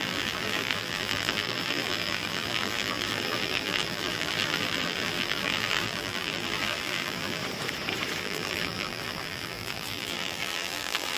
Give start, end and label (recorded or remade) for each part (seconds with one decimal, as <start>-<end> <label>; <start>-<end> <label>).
0.0-7.4 remade; 7.4-8.2 recorded; 8.2-11.2 remade